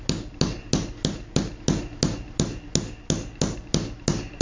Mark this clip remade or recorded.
recorded